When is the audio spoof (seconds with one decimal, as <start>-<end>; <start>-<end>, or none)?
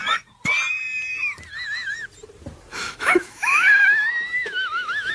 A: 2.7-5.1